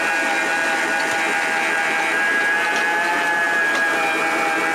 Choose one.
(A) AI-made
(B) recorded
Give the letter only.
B